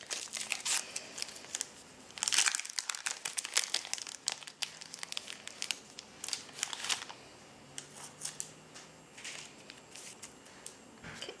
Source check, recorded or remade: recorded